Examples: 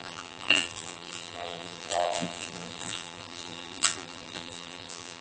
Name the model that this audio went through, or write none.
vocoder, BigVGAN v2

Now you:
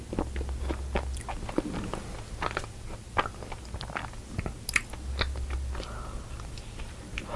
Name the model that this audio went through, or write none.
none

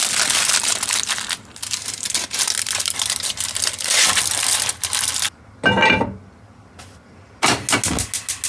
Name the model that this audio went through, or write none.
none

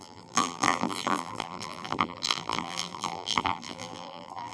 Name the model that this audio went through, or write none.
vocoder, BigVGAN v2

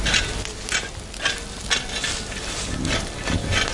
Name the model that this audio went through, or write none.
none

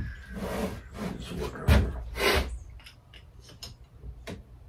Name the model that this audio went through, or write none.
none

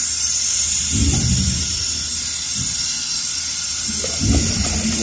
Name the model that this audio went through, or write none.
none